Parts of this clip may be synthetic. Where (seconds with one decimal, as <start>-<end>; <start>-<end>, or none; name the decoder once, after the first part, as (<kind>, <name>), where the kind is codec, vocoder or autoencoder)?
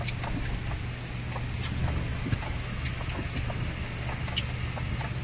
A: 1.8-3.2 (autoencoder, DAC-VAE)